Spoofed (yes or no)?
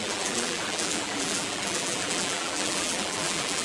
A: yes